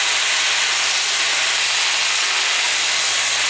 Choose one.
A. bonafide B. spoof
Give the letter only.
A